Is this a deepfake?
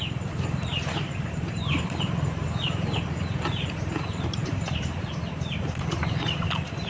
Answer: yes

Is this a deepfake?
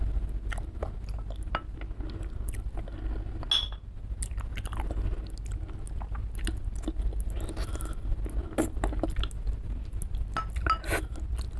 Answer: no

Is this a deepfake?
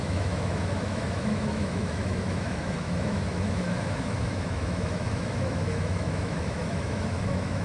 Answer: yes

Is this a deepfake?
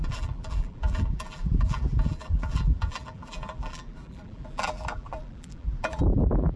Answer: yes